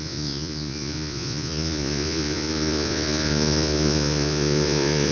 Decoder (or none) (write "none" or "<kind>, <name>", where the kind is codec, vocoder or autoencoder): vocoder, Vocos